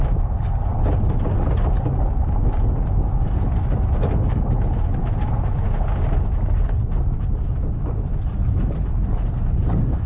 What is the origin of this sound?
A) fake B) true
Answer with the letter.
B